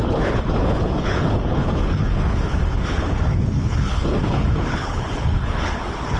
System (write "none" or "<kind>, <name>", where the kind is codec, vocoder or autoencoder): codec, HILCodec